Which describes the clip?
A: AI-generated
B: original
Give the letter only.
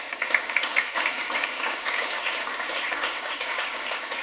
A